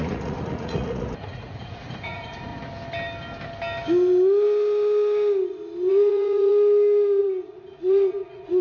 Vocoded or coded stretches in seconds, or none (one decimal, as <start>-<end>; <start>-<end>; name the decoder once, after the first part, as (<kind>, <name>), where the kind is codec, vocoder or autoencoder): 0.0-2.5 (vocoder, Vocos); 5.9-6.5; 7.2-8.6